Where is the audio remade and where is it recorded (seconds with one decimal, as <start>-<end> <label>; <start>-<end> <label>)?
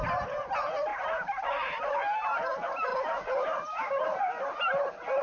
0.0-0.9 recorded; 0.9-1.8 remade; 1.8-2.9 recorded; 2.9-4.4 remade; 4.4-5.2 recorded